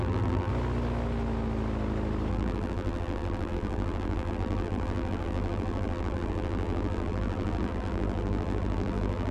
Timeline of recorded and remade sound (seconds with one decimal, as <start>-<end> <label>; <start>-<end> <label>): 0.0-0.5 remade; 0.5-2.3 recorded; 2.3-9.3 remade